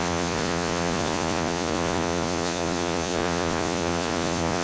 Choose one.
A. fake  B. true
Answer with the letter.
A